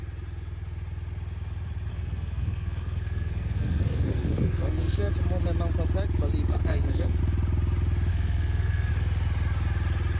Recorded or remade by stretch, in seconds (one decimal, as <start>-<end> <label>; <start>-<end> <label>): 0.0-1.9 recorded; 1.9-5.1 remade; 5.1-6.5 recorded; 6.5-7.2 remade; 7.2-8.1 recorded; 8.1-8.9 remade; 8.9-10.2 recorded